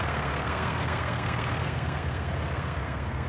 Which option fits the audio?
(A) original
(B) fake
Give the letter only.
B